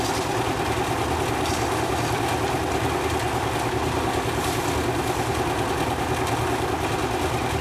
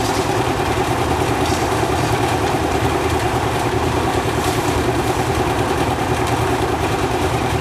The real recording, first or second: first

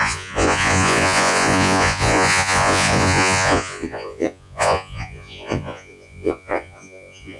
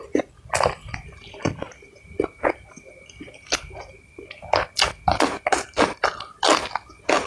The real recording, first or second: second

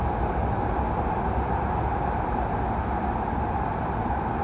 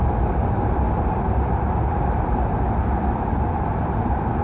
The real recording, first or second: first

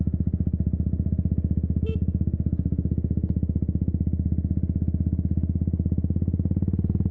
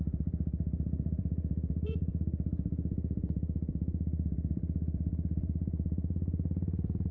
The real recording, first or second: first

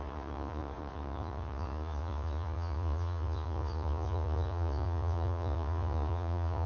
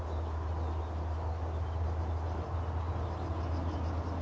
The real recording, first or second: second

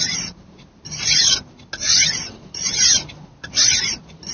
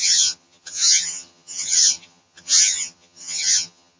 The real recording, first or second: first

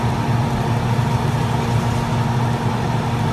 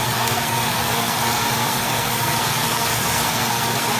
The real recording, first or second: first